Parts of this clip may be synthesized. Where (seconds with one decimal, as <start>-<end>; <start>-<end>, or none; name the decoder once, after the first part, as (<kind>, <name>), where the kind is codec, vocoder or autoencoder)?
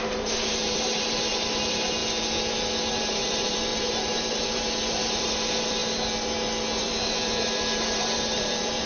0.0-2.0 (vocoder, BigVGAN v2); 2.9-5.8; 6.8-8.9